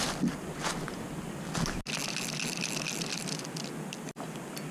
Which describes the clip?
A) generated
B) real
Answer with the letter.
B